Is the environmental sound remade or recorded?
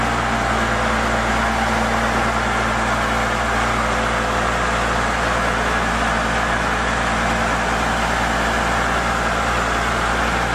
recorded